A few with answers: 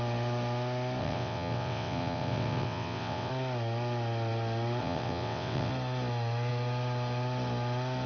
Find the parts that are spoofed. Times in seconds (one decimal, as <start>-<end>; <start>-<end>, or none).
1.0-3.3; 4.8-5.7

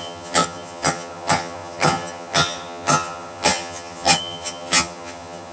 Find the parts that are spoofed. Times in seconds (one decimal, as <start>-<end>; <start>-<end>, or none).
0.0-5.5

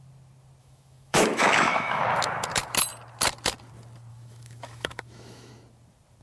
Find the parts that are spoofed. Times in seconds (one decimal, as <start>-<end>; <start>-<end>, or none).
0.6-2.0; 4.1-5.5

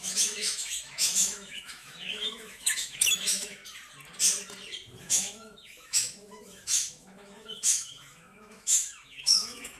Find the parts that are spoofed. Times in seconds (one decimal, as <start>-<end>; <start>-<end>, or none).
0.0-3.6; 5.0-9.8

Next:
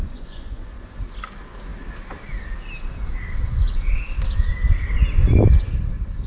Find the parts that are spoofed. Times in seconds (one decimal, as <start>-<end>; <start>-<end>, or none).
0.0-1.0

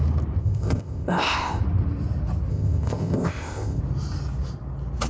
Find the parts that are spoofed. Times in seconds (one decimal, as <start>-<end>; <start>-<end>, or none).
0.4-1.6; 2.5-3.8

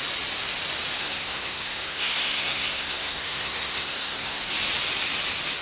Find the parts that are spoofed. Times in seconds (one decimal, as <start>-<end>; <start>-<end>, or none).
1.0-4.4